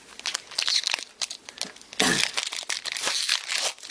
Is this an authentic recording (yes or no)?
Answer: yes